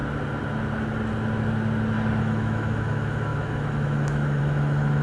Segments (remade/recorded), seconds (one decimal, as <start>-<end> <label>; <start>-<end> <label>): 0.0-2.2 recorded; 2.2-5.0 remade